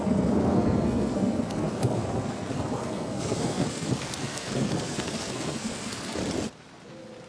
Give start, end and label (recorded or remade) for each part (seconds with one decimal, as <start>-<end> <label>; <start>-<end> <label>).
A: 0.0-6.2 remade; 6.2-7.3 recorded